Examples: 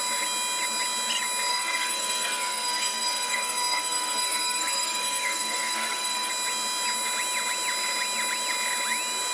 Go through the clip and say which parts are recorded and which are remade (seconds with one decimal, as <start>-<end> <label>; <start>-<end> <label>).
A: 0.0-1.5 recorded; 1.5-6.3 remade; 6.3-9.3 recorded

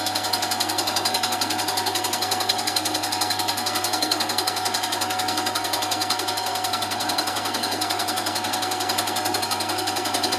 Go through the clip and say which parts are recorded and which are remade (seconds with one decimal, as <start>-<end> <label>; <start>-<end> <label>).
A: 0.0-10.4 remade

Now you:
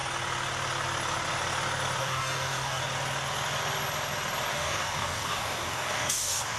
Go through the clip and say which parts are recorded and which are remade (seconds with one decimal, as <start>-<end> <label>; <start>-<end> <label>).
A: 0.0-2.0 recorded; 2.0-2.8 remade; 2.8-4.5 recorded; 4.5-6.6 remade